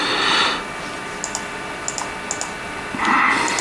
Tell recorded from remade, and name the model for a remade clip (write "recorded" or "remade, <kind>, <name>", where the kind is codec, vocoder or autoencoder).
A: recorded